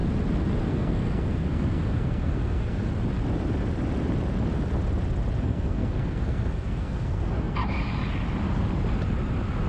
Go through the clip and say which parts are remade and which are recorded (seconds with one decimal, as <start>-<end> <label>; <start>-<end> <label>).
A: 0.0-0.6 recorded; 0.6-2.9 remade; 2.9-5.4 recorded; 5.4-7.6 remade; 7.6-9.7 recorded